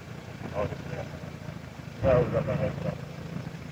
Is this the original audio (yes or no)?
no